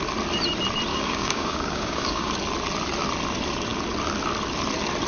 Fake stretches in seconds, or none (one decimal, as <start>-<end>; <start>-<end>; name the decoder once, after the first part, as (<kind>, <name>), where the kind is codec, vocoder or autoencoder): 0.9-2.3 (codec, DAC)